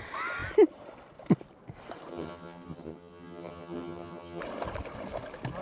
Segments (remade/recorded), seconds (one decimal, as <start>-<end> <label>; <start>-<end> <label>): 0.0-2.1 recorded; 2.1-4.4 remade; 4.4-5.6 recorded